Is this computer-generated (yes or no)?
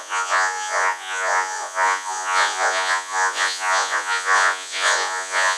yes